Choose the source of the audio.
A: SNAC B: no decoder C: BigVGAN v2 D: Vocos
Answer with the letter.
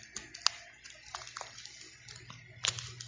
B